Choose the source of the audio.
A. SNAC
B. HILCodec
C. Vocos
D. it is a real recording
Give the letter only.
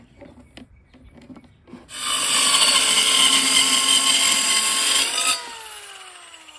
D